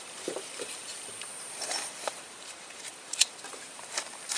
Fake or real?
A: fake